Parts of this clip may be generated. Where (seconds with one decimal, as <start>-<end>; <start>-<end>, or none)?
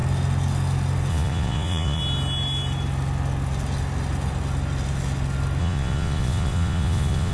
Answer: 1.1-2.0; 5.6-7.3